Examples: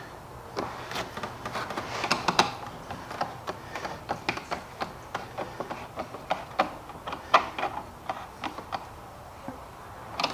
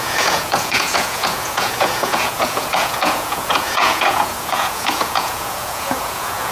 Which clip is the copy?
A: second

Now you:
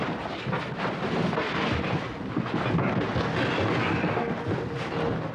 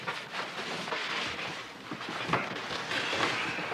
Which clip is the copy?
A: second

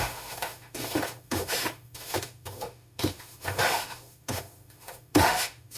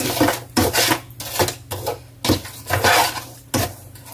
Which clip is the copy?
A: first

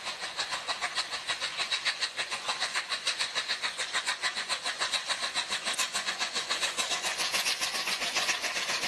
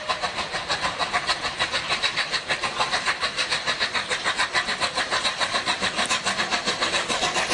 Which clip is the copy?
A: first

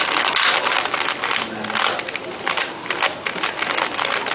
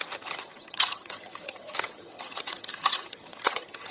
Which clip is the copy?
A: second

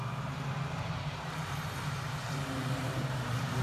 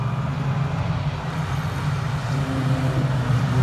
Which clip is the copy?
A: first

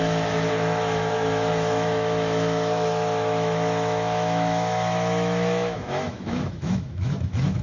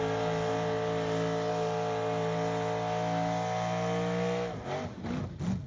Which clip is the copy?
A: first